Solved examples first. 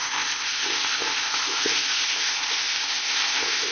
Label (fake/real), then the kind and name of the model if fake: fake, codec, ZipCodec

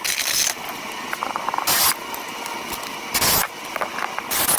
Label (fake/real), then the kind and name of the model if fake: real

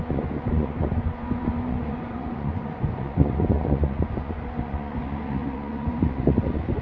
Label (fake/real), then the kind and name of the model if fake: fake, vocoder, Vocos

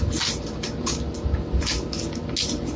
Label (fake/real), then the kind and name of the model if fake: real